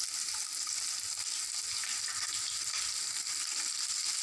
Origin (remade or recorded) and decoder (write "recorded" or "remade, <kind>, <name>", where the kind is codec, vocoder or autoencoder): recorded